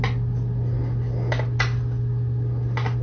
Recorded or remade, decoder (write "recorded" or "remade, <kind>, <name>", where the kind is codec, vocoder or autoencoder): recorded